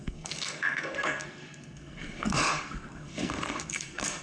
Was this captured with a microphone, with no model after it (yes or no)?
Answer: no